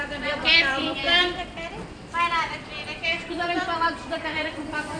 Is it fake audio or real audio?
fake